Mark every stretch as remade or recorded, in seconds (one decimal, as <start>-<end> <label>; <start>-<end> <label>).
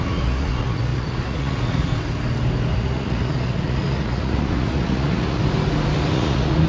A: 0.0-1.9 remade; 1.9-2.7 recorded; 2.7-5.4 remade; 5.4-6.1 recorded; 6.1-6.7 remade